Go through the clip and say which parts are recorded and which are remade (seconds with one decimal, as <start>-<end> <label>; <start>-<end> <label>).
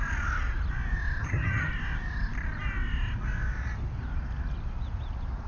0.0-1.2 recorded; 1.2-1.7 remade; 1.7-5.5 recorded